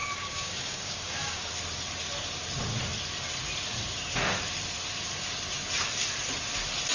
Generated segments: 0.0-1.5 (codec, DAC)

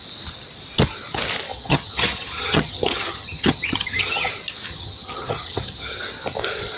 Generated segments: 1.5-4.3 (vocoder, HiFi-GAN); 4.7-6.0

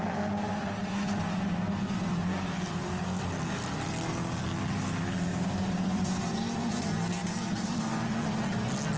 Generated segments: 5.3-6.8 (vocoder, BigVGAN v2); 7.2-7.8

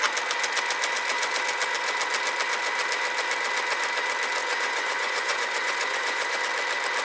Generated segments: 4.4-6.4 (vocoder, Vocos)

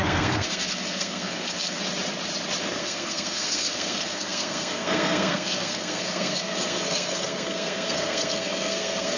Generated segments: 0.0-1.8 (codec, SNAC); 2.7-9.2

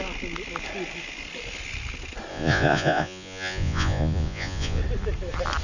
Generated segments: 2.3-4.8 (vocoder, Vocos)